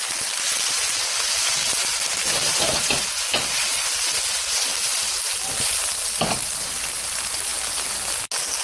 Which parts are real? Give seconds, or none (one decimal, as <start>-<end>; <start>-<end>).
0.0-8.6